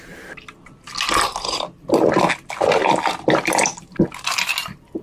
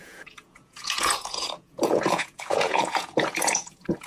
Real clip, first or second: first